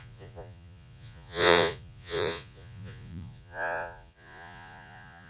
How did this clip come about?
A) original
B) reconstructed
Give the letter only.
B